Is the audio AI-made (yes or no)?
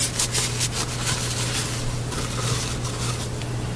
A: no